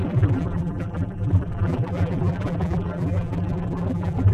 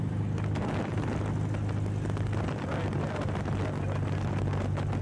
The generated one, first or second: first